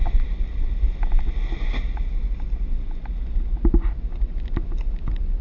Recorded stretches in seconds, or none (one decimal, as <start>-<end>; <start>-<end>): 0.0-5.4